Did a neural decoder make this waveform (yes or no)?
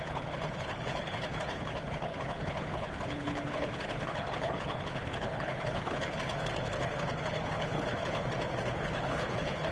yes